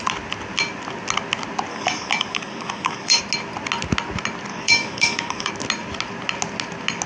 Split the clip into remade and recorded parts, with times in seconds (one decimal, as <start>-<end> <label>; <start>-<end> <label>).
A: 0.0-1.7 recorded; 1.7-3.2 remade; 3.2-4.5 recorded; 4.5-5.5 remade; 5.5-7.1 recorded